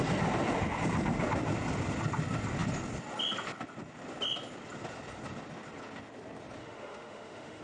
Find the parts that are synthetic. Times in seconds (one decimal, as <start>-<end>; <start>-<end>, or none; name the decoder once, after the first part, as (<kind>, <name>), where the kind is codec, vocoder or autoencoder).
6.6-7.6 (autoencoder, DAC-VAE)